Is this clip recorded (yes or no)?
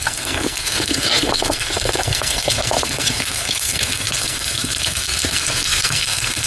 no